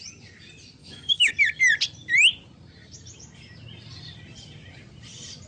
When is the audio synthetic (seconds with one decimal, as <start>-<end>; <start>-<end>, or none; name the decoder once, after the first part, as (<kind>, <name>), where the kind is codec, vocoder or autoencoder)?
0.8-1.3 (autoencoder, DAC-VAE)